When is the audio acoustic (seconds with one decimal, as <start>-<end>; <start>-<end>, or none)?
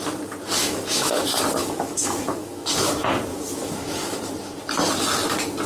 0.0-0.6; 1.2-1.6; 2.9-3.3; 4.2-5.7